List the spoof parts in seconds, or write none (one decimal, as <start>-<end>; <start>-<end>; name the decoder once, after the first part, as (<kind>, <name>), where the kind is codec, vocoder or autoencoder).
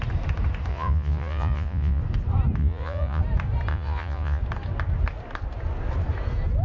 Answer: 0.7-2.0 (vocoder, Vocos); 2.6-3.2; 3.7-4.4